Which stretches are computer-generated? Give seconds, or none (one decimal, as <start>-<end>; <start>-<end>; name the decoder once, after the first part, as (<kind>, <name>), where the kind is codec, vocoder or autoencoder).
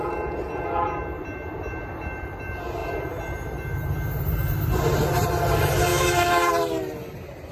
5.9-6.5 (autoencoder, DAC-VAE)